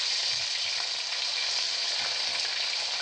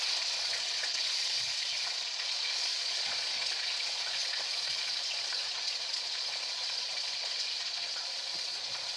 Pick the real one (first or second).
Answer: first